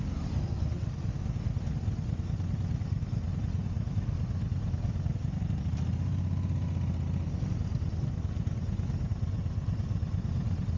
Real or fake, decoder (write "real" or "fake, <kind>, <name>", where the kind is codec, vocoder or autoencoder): real